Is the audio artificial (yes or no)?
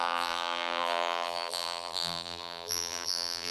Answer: yes